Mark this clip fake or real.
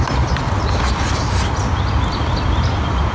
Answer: real